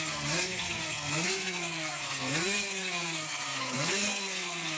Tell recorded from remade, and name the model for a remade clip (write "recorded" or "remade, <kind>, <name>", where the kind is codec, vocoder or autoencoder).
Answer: remade, codec, SNAC